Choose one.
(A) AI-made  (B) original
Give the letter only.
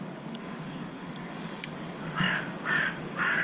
A